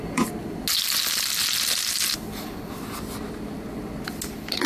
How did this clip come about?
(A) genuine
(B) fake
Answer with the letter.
A